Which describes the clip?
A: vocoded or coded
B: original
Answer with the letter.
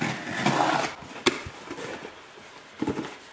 B